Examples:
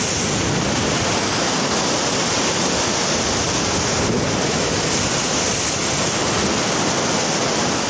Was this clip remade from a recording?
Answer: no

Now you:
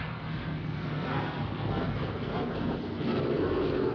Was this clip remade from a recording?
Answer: yes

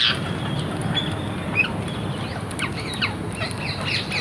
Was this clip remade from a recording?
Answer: no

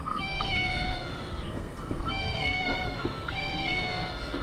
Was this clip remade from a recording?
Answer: yes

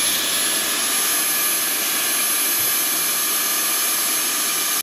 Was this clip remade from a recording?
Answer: no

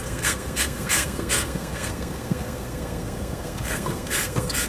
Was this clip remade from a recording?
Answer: yes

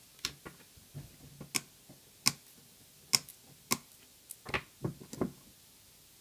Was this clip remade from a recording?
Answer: no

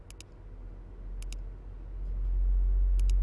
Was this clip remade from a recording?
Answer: no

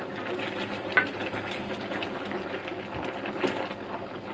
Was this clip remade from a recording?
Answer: no